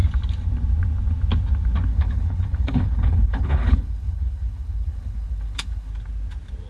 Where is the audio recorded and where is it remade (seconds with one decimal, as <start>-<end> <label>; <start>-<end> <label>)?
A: 0.0-1.9 recorded; 1.9-5.9 remade; 5.9-6.7 recorded